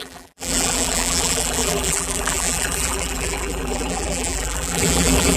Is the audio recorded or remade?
remade